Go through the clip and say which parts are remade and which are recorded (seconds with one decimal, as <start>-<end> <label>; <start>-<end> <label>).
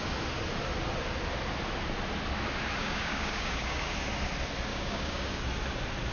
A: 0.0-2.8 recorded; 2.8-3.9 remade; 3.9-4.7 recorded; 4.7-5.4 remade; 5.4-6.1 recorded